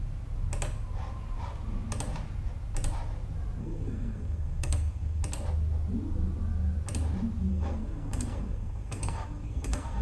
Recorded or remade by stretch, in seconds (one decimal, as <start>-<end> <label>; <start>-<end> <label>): 0.0-3.6 recorded; 3.6-5.2 remade; 5.2-7.5 recorded; 7.5-10.0 remade